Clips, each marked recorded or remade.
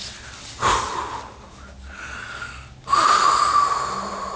recorded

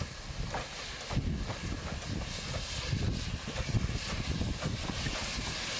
recorded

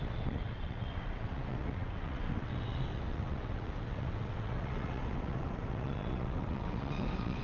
remade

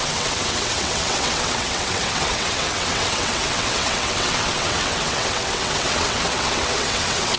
remade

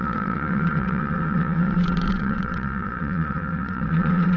remade